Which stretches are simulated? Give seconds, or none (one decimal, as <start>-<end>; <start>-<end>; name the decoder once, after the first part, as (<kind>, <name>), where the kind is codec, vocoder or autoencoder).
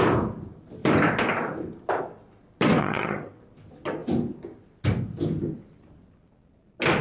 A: 2.8-3.4 (vocoder, HiFi-GAN)